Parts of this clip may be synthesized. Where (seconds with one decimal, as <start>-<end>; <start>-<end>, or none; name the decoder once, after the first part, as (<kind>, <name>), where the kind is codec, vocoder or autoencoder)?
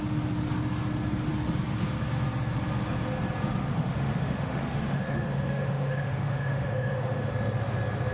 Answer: 3.7-7.3 (autoencoder, DAC-VAE)